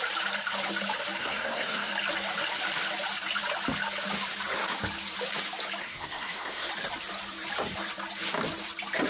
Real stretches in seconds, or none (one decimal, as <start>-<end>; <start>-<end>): 0.0-1.2; 1.9-5.8; 6.7-9.1